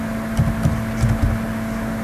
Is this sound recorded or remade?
recorded